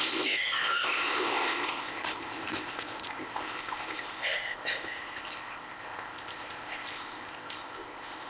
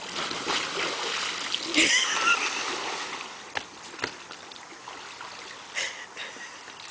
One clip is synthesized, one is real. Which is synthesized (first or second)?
first